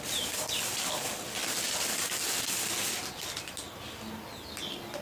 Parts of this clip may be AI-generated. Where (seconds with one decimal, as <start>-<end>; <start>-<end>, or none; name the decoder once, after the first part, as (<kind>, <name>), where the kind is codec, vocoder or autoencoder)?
none